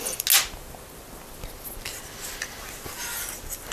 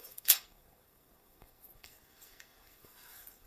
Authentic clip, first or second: first